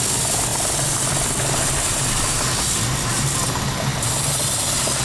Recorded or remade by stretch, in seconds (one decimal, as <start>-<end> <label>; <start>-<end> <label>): 0.0-0.5 recorded; 0.5-3.5 remade; 3.5-3.9 recorded; 3.9-5.0 remade